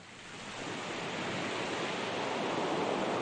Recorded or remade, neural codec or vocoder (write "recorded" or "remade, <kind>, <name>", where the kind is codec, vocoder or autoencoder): recorded